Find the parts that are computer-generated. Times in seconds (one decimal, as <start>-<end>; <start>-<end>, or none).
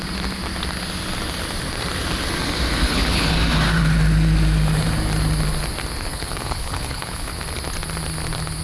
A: 2.8-3.3; 6.1-7.3